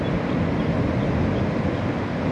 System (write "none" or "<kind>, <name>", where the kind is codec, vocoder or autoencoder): none